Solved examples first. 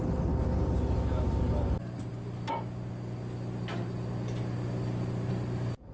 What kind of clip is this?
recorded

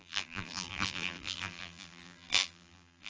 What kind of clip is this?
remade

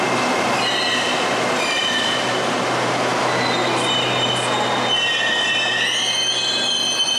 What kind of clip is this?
recorded